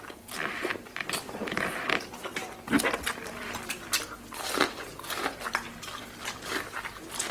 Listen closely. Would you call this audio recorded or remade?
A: remade